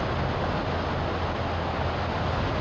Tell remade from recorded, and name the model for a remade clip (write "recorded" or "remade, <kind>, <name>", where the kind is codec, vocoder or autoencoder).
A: recorded